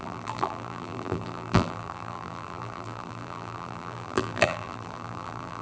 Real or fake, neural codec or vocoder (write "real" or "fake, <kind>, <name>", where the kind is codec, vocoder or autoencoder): fake, vocoder, BigVGAN v2